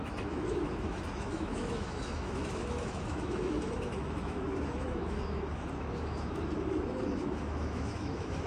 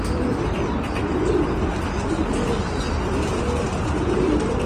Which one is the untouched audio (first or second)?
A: second